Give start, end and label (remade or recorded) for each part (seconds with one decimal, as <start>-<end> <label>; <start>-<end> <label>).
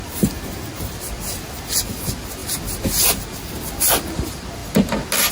0.0-5.3 recorded